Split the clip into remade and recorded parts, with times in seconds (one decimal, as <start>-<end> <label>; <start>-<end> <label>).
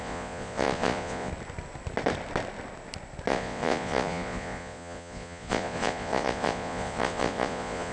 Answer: 0.0-1.3 remade; 1.3-3.3 recorded; 3.3-7.9 remade